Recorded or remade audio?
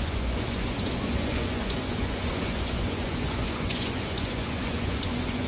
remade